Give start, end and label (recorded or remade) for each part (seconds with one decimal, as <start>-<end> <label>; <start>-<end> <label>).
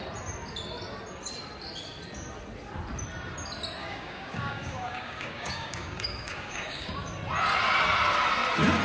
0.0-3.8 recorded; 3.8-6.9 remade; 6.9-8.8 recorded